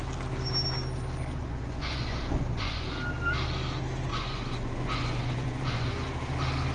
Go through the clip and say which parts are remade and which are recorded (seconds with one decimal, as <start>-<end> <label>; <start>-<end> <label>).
0.0-1.4 recorded; 1.4-2.9 remade; 2.9-4.1 recorded; 4.1-6.0 remade; 6.0-6.7 recorded